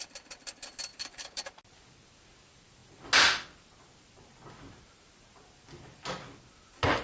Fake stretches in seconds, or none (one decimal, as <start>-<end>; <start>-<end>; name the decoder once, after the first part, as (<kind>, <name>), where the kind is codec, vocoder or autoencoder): 0.9-1.6 (vocoder, BigVGAN v2)